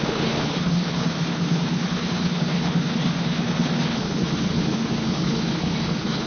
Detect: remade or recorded remade